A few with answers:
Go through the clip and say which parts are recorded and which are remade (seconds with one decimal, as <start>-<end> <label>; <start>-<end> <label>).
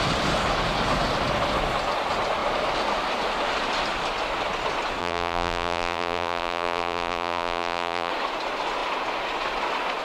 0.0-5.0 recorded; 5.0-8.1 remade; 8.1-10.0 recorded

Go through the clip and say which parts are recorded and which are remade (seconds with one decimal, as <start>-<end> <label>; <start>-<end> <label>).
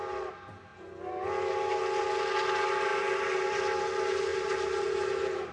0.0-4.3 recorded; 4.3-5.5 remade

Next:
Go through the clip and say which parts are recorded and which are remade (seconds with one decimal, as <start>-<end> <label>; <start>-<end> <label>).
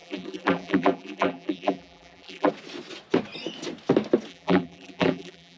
0.0-2.5 remade; 2.5-4.3 recorded; 4.3-5.6 remade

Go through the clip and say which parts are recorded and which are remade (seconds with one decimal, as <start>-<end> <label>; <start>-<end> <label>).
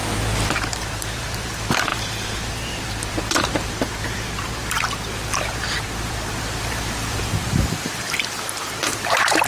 0.0-0.5 recorded; 0.5-9.5 remade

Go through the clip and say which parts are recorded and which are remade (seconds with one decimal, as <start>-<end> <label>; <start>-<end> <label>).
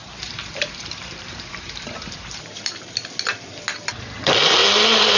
0.0-3.1 remade; 3.1-5.2 recorded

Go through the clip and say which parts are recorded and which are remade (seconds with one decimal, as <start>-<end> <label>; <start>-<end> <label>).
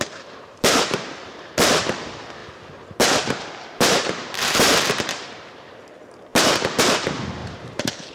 0.0-8.1 remade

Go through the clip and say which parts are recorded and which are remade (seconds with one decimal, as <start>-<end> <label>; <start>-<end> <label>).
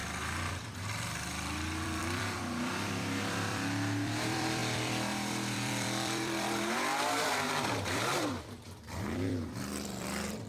0.0-10.5 remade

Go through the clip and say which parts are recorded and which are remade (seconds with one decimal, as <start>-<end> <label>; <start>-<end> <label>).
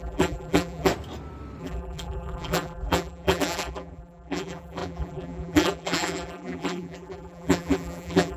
0.0-0.9 remade; 0.9-1.6 recorded; 1.6-8.4 remade